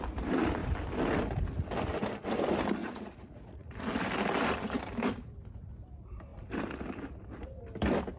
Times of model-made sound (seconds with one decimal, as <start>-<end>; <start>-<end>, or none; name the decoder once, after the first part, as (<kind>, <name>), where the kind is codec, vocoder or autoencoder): 2.8-3.7 (vocoder, Vocos)